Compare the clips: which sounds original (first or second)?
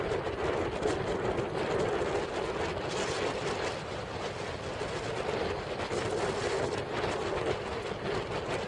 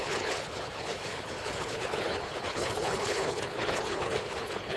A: first